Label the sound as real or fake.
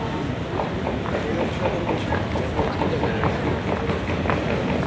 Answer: real